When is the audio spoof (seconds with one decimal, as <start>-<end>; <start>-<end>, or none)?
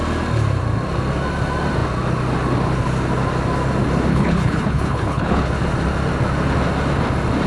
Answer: 4.1-5.5